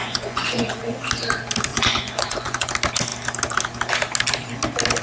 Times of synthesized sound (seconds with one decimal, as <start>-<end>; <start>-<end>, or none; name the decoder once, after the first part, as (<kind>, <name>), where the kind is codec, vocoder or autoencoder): 0.0-0.8 (vocoder, Vocos); 1.7-2.7